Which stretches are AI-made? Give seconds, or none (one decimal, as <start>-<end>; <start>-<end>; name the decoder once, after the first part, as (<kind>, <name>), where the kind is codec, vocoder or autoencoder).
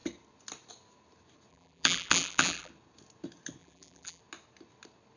1.5-2.7 (vocoder, BigVGAN v2); 3.6-4.2